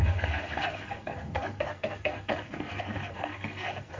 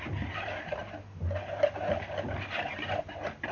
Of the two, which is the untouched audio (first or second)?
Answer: second